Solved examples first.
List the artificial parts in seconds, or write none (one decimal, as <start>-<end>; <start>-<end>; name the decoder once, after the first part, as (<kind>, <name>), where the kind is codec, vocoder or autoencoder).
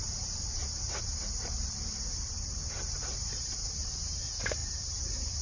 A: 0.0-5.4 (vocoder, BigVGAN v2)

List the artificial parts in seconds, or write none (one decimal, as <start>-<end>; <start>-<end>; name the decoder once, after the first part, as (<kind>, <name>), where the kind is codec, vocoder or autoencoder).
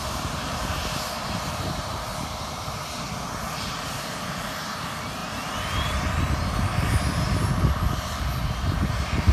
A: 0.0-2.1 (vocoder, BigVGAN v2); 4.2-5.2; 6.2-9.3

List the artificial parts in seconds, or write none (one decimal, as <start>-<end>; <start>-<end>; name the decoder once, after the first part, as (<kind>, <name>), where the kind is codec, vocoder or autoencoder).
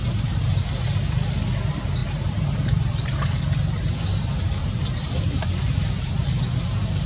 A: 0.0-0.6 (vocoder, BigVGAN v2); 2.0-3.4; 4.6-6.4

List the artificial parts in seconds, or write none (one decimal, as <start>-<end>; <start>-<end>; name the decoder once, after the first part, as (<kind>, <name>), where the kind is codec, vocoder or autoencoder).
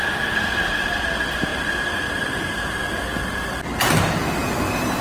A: 0.0-1.0 (vocoder, BigVGAN v2)